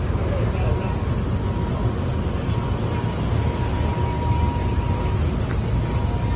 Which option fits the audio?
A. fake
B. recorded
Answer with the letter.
B